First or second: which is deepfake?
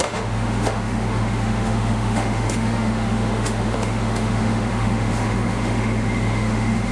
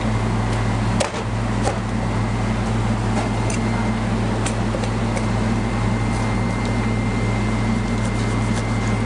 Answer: first